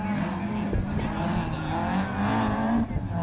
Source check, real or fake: real